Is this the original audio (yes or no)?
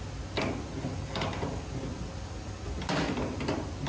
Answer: yes